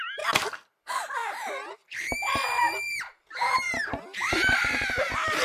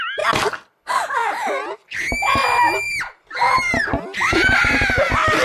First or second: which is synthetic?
first